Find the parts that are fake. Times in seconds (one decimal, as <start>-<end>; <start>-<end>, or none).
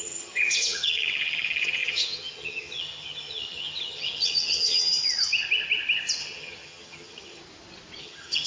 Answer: 0.0-5.0; 6.2-7.4; 8.0-8.5